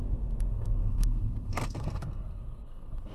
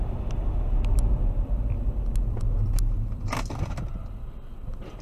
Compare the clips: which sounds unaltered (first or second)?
second